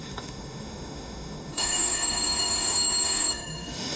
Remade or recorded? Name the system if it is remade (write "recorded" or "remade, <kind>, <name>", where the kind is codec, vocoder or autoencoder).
remade, autoencoder, DAC-VAE